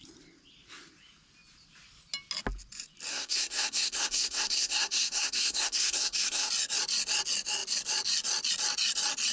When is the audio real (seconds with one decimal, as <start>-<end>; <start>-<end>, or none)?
0.0-3.1; 6.5-9.3